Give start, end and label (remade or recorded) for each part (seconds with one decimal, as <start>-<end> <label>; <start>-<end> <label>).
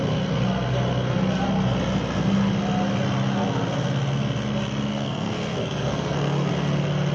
0.0-4.9 recorded; 4.9-6.5 remade; 6.5-7.1 recorded